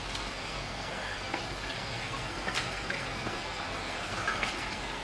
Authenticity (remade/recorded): remade